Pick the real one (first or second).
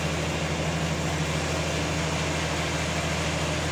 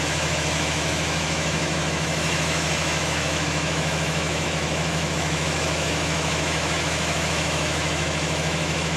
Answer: first